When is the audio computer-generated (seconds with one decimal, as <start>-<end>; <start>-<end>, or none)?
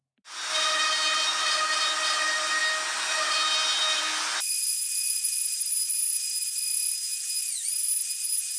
none